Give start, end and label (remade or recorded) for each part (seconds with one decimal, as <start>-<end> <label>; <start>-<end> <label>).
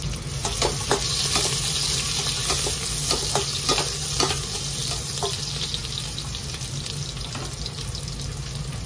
0.0-8.9 recorded